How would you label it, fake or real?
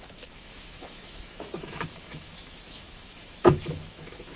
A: fake